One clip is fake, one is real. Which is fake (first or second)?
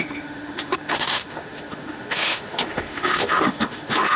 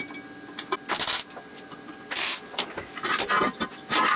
first